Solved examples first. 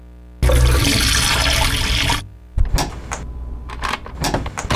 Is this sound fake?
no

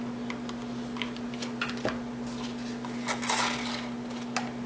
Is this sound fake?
no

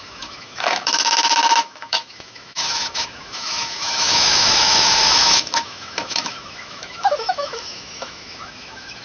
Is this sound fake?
yes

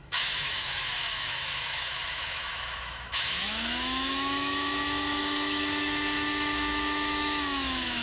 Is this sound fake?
yes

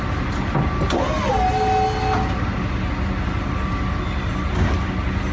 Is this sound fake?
no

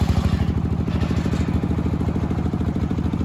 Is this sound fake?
no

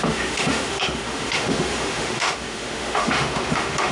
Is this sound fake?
yes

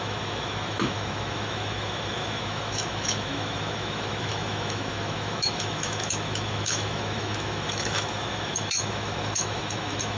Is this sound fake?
yes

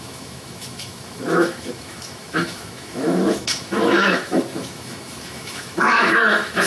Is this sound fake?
yes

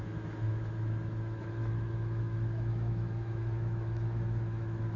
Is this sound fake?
yes